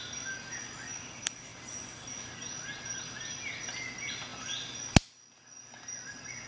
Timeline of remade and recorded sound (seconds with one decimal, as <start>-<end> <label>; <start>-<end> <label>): 0.0-6.5 recorded